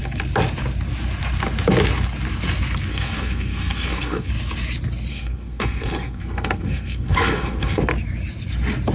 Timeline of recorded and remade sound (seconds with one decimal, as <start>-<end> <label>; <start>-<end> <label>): 0.0-2.9 recorded; 2.9-4.3 remade; 4.3-5.1 recorded; 5.1-7.8 remade; 7.8-8.9 recorded